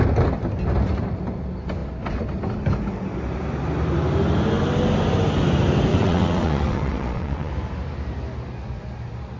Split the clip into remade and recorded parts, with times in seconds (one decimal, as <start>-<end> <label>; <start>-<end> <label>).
0.0-5.9 recorded; 5.9-7.5 remade; 7.5-9.4 recorded